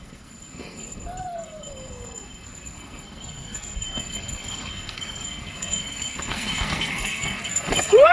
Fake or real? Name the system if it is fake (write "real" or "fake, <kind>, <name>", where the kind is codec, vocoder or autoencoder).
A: fake, codec, SNAC